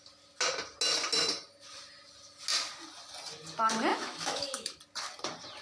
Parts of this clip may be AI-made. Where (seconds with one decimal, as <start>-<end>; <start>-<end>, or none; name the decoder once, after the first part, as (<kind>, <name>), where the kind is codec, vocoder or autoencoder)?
3.9-4.8 (autoencoder, DAC-VAE)